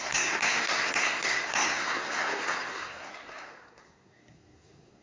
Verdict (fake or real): fake